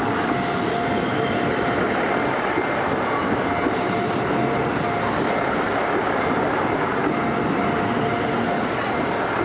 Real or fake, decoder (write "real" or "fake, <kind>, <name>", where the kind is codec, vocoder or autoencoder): real